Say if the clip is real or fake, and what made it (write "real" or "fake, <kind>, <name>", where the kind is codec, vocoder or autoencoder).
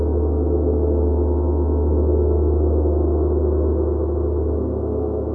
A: real